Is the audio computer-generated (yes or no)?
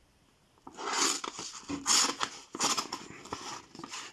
no